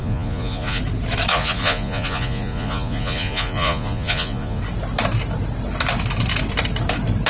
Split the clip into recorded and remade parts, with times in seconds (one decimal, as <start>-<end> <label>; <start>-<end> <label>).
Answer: 0.0-0.8 remade; 0.8-1.3 recorded; 1.3-4.6 remade; 4.6-7.3 recorded